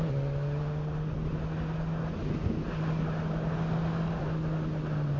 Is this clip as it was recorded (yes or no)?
yes